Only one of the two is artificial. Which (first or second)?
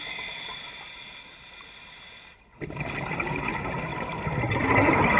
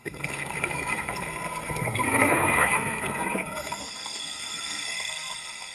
second